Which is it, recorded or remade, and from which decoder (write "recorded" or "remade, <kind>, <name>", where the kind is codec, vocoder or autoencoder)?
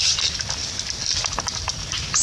recorded